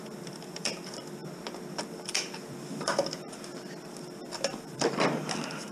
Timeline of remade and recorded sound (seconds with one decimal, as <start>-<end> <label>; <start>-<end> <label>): 0.0-1.2 remade; 1.2-1.9 recorded; 1.9-3.5 remade; 3.5-4.3 recorded; 4.3-5.7 remade